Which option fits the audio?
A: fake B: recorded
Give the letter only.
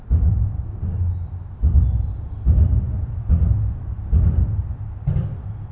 B